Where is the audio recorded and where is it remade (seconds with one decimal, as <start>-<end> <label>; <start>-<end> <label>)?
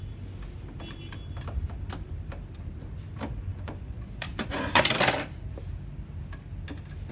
0.0-3.5 recorded; 3.5-4.9 remade; 4.9-7.1 recorded